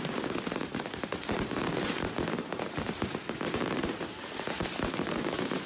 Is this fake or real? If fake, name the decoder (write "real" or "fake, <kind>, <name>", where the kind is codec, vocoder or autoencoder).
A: fake, vocoder, BigVGAN v2